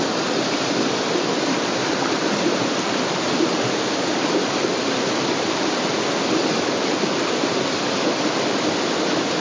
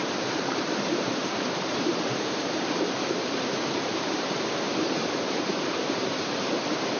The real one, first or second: first